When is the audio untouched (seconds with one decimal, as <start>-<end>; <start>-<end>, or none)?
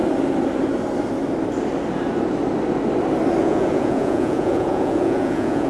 0.0-3.4